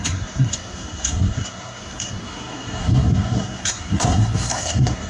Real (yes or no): no